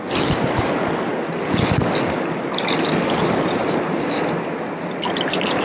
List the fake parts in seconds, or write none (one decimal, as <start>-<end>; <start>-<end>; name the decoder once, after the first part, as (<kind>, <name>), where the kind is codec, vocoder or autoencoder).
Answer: none